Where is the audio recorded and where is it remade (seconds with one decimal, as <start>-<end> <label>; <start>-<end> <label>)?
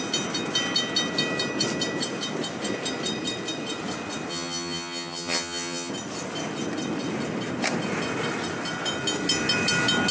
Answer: 0.0-4.3 recorded; 4.3-5.9 remade; 5.9-10.1 recorded